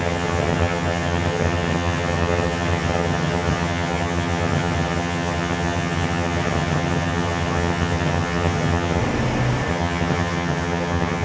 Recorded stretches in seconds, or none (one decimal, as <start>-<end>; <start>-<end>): 9.0-9.7